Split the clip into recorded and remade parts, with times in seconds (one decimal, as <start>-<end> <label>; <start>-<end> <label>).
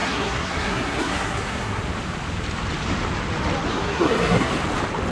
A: 0.0-1.8 remade; 1.8-3.7 recorded; 3.7-4.5 remade; 4.5-5.1 recorded